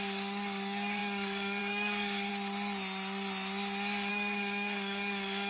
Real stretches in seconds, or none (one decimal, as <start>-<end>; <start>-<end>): 2.3-4.1